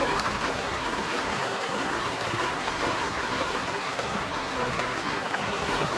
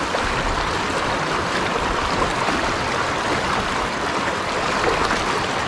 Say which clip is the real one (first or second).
second